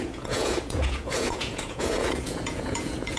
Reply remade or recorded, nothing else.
remade